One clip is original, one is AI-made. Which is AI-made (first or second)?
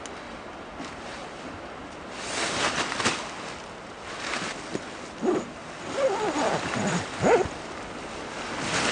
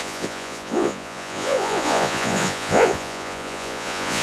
second